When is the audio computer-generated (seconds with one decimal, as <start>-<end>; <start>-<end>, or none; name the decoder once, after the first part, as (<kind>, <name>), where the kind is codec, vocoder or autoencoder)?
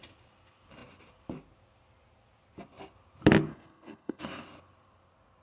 3.5-4.2 (codec, SNAC)